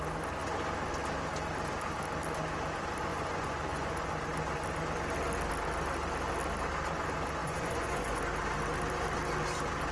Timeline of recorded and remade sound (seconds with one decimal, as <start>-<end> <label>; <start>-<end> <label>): 0.0-3.1 recorded; 3.1-4.1 remade; 4.1-7.4 recorded; 7.4-8.2 remade; 8.2-9.9 recorded